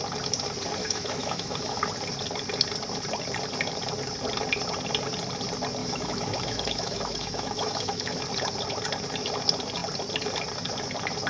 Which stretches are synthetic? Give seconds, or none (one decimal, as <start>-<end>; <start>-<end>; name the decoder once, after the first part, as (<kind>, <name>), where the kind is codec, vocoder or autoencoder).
0.8-1.8 (autoencoder, DAC-VAE); 5.8-8.2